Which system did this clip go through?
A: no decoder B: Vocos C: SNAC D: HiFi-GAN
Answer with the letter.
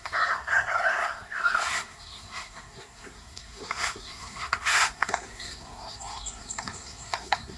C